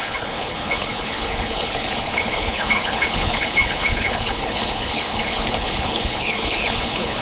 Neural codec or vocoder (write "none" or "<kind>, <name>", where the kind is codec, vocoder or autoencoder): codec, HILCodec